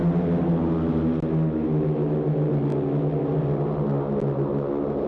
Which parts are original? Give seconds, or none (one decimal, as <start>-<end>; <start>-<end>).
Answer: 0.0-5.1